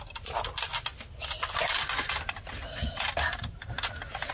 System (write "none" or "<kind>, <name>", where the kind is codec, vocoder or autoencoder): none